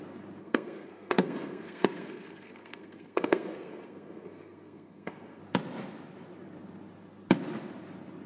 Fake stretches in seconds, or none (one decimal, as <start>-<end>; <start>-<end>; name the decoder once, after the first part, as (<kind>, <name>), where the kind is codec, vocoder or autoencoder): 0.4-5.4 (codec, SNAC)